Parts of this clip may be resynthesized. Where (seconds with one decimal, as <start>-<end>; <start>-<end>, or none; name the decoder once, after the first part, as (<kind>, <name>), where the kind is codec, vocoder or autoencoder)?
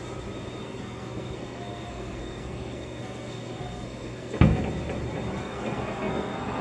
0.6-4.6 (codec, SNAC); 5.4-6.6